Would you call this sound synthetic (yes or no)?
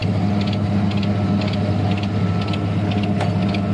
no